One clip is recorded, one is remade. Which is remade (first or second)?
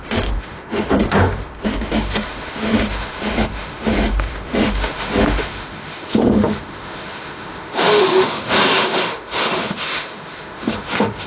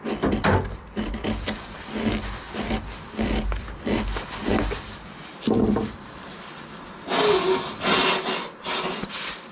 first